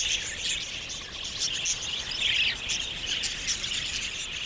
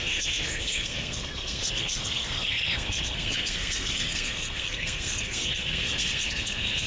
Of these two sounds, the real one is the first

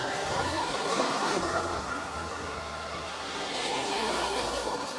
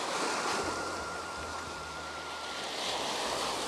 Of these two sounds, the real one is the second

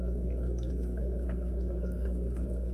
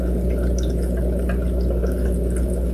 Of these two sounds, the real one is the second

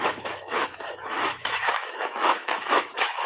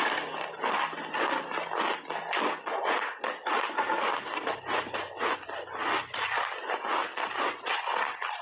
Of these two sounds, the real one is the second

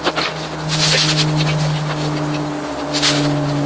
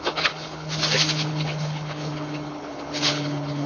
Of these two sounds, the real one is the first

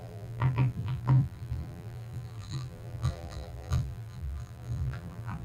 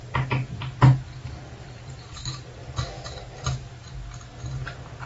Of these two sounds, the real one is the second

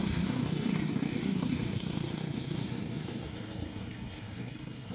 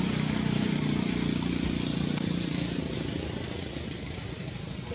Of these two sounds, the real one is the second